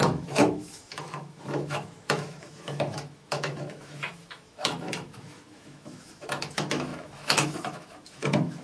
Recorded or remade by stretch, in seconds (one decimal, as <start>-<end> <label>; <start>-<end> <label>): 0.0-8.6 remade